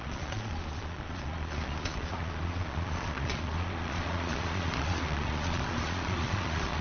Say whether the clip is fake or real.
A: fake